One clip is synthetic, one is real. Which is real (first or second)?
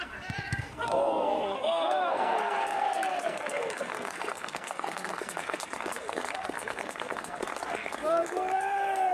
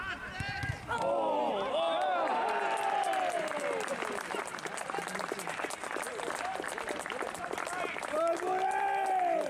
second